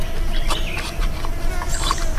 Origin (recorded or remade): recorded